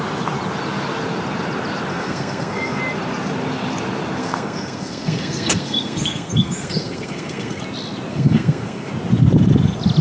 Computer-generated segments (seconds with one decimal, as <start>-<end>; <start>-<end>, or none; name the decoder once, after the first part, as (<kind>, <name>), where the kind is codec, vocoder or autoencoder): 1.9-2.8 (codec, SNAC); 4.2-7.6; 8.1-8.9

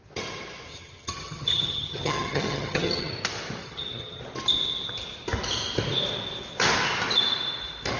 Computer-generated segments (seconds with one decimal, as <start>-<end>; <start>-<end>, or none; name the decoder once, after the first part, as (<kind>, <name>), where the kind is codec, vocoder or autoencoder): 0.7-3.1 (vocoder, HiFi-GAN); 3.6-4.2

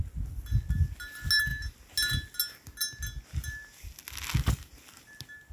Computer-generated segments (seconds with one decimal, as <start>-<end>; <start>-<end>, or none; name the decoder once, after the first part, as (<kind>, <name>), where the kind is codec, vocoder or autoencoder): none

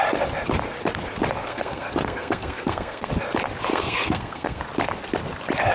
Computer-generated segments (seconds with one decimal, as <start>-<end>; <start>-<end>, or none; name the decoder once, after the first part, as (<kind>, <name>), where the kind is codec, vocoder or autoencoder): 1.4-3.1 (codec, SNAC); 3.7-4.6